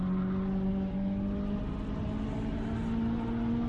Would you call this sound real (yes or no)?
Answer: yes